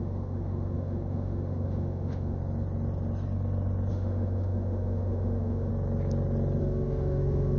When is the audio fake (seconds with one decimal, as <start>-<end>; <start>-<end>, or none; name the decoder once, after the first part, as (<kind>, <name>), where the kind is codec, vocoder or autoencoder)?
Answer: 0.0-2.4 (autoencoder, DAC-VAE); 3.9-5.7; 6.6-7.6